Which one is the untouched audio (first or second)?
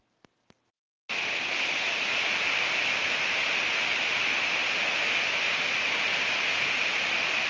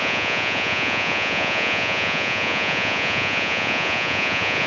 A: first